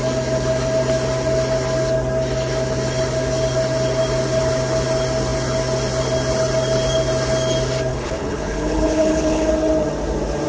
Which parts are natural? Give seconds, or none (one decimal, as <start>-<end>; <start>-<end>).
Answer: 0.0-7.9; 9.5-10.5